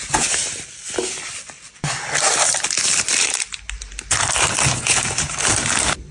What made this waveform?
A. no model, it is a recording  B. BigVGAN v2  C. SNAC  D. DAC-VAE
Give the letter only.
A